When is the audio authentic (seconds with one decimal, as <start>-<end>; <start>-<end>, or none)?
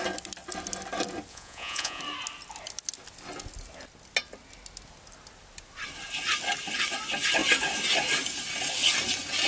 0.0-1.3; 2.0-9.5